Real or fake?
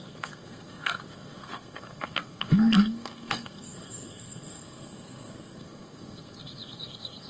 fake